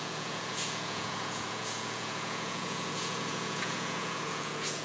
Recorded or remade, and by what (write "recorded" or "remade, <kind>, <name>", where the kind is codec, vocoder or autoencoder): remade, vocoder, Vocos